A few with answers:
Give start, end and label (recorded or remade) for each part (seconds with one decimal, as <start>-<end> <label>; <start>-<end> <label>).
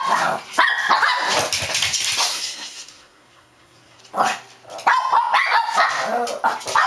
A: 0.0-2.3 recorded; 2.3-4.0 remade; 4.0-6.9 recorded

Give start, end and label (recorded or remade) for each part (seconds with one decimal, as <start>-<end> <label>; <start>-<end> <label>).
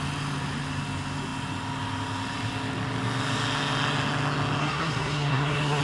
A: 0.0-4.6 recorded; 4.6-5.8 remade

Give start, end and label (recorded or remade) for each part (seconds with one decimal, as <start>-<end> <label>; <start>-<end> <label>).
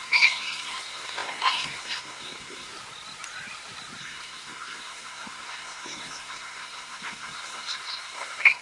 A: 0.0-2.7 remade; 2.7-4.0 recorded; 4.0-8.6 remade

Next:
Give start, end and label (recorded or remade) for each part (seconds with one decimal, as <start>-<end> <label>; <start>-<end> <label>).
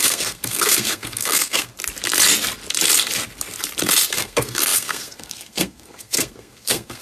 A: 0.0-1.7 remade; 1.7-4.1 recorded; 4.1-7.0 remade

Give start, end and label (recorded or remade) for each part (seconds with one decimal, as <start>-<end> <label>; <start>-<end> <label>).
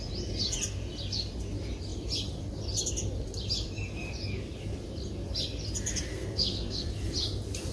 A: 0.0-6.1 recorded; 6.1-6.9 remade; 6.9-7.7 recorded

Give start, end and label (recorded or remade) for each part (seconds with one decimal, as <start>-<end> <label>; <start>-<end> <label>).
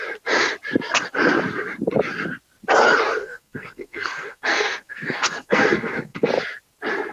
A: 0.0-3.2 recorded; 3.2-6.3 remade; 6.3-7.1 recorded